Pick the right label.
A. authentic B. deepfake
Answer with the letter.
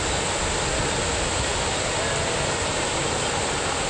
A